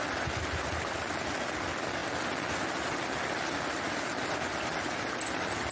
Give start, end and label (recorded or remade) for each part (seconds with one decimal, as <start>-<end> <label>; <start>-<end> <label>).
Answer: 0.0-5.7 recorded